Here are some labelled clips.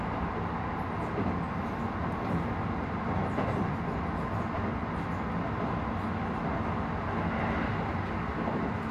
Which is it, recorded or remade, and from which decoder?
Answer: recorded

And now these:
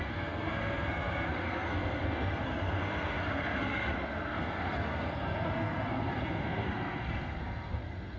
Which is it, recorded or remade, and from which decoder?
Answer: remade, codec, SNAC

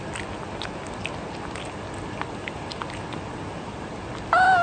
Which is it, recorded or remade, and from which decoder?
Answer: recorded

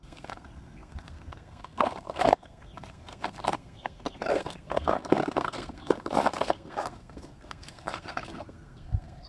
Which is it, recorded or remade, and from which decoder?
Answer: remade, codec, SNAC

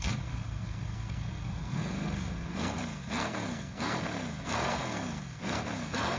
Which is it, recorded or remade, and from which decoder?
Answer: remade, codec, SNAC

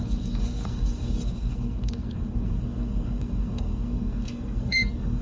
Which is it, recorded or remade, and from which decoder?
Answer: remade, codec, SNAC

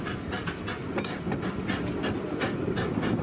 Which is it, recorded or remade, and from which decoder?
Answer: recorded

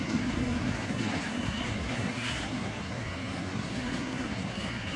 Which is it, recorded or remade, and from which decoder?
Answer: remade, codec, SNAC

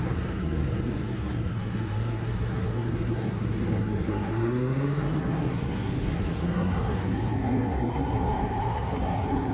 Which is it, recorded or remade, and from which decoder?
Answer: remade, codec, SNAC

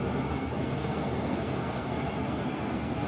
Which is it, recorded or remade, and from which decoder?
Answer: remade, codec, SNAC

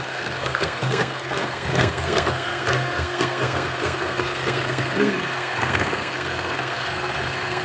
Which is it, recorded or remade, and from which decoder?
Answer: remade, codec, SNAC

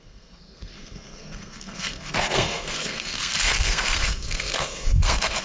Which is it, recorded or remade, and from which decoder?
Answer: remade, codec, SNAC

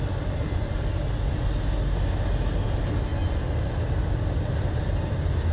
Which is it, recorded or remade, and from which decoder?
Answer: recorded